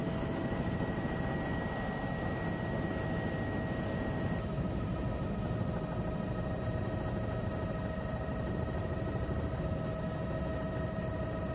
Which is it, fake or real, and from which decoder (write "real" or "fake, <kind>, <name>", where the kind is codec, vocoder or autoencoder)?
real